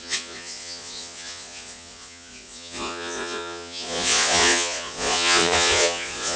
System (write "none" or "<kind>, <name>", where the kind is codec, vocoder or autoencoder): vocoder, Vocos